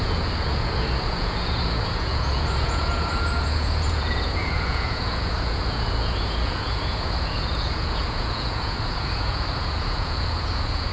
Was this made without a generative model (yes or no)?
no